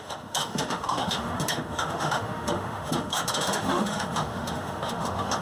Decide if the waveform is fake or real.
fake